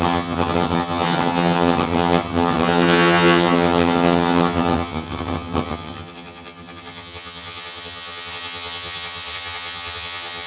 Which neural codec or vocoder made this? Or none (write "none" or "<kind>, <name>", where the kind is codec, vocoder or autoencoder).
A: vocoder, HiFi-GAN